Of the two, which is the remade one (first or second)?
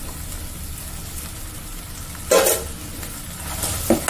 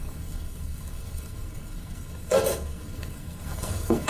second